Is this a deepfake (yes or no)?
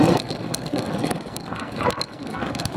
yes